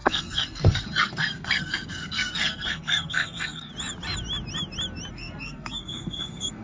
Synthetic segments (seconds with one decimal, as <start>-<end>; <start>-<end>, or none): 0.0-3.7; 5.1-6.6